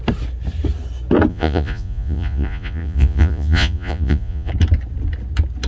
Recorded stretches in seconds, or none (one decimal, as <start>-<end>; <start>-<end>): 0.0-1.3; 4.5-5.7